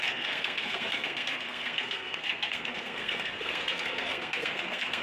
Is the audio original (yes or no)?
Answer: no